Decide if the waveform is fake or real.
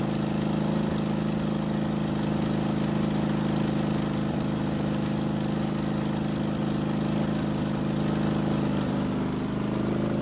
real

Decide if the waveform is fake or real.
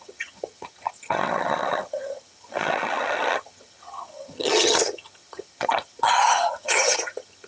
fake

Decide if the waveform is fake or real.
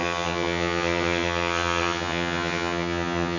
fake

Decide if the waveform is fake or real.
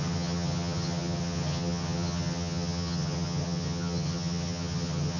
fake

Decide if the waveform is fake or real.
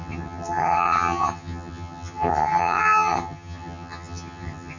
fake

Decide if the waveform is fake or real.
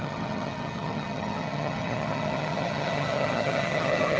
fake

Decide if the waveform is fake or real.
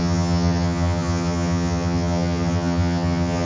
fake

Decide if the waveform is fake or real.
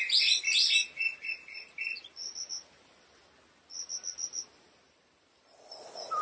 real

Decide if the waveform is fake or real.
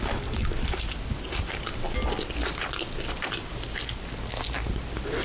real